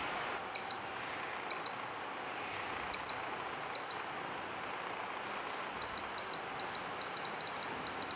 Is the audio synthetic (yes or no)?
no